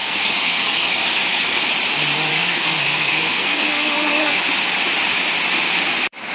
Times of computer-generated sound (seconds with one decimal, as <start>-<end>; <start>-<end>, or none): 0.0-1.6; 2.3-4.4